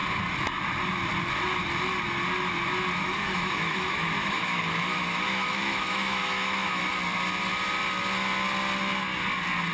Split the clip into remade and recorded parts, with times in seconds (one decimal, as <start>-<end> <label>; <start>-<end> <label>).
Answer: 0.0-3.0 recorded; 3.0-6.8 remade; 6.8-9.7 recorded